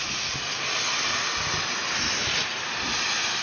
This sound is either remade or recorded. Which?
recorded